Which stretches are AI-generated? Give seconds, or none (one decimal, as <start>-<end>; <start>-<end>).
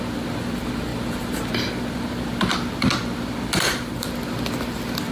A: none